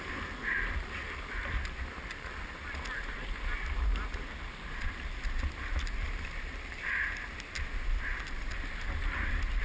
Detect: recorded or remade recorded